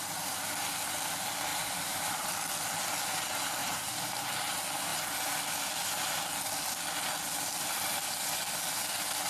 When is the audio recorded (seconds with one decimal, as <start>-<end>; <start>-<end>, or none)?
0.0-1.5; 2.3-3.6; 4.2-9.3